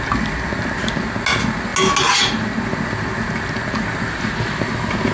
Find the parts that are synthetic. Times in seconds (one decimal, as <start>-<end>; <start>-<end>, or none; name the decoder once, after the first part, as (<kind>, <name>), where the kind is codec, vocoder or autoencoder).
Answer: none